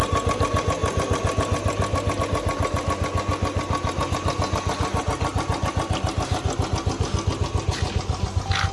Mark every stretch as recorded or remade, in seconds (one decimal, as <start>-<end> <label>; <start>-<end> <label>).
0.0-8.7 recorded